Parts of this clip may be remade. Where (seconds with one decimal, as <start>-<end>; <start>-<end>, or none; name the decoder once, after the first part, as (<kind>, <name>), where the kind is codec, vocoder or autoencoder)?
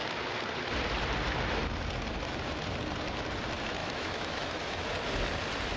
3.8-4.8 (autoencoder, DAC-VAE)